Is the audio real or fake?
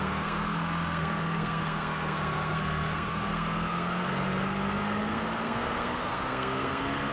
fake